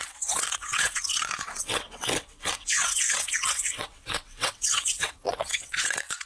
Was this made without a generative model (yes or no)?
no